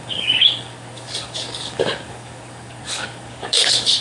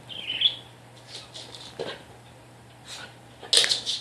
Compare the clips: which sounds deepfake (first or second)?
first